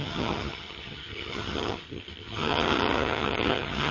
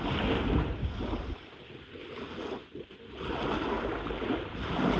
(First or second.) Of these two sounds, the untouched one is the second